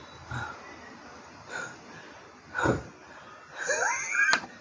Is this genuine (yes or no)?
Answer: yes